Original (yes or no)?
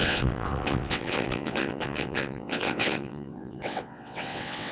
no